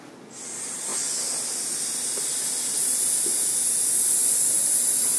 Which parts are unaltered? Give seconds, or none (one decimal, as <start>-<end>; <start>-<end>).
0.0-5.2